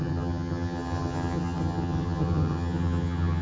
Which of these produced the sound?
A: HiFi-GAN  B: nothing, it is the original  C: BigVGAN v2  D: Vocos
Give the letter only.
A